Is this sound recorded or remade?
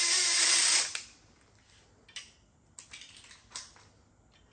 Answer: recorded